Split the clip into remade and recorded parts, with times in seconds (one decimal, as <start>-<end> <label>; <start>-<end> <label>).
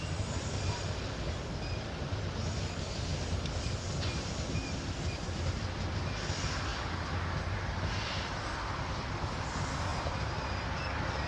0.0-9.9 recorded; 9.9-10.4 remade; 10.4-11.3 recorded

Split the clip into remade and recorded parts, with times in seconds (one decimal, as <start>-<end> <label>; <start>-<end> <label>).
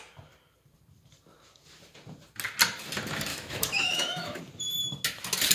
0.0-3.3 recorded; 3.3-4.4 remade; 4.4-5.5 recorded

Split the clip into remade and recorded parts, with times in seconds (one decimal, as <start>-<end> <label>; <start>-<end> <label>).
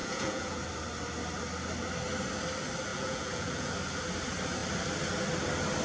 0.0-0.6 remade; 0.6-2.9 recorded; 2.9-3.7 remade; 3.7-5.8 recorded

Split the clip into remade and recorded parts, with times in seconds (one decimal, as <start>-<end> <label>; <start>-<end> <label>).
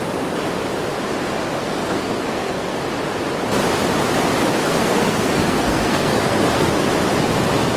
0.0-1.6 recorded; 1.6-2.8 remade; 2.8-4.6 recorded; 4.6-6.9 remade; 6.9-7.8 recorded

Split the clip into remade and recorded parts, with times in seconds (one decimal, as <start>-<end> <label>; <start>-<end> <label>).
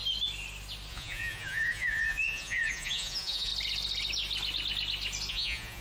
0.0-0.9 recorded; 0.9-3.5 remade; 3.5-5.3 recorded; 5.3-5.8 remade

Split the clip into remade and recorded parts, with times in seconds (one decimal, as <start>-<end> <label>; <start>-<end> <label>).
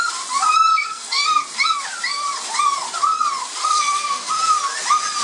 0.0-0.7 recorded; 0.7-1.4 remade; 1.4-3.6 recorded; 3.6-4.3 remade; 4.3-5.2 recorded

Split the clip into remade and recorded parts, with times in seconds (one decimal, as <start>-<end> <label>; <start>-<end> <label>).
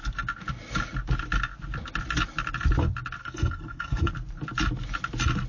0.0-3.2 recorded; 3.2-4.1 remade; 4.1-5.5 recorded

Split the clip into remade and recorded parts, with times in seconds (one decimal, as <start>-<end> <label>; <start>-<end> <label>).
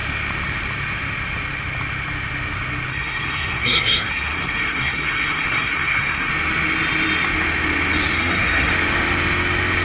0.0-2.9 recorded; 2.9-6.3 remade; 6.3-8.1 recorded; 8.1-8.7 remade; 8.7-9.8 recorded